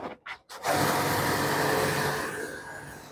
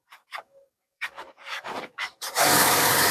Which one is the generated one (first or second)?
second